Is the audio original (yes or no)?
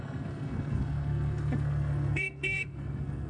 no